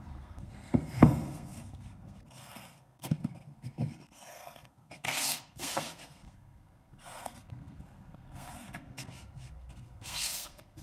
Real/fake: fake